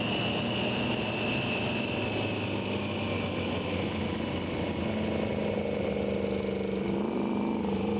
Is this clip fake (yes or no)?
no